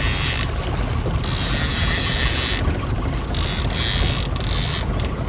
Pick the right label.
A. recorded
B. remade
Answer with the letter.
A